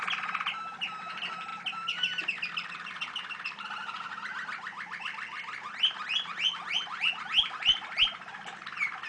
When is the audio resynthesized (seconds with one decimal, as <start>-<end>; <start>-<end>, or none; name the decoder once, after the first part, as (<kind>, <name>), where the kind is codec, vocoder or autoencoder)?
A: none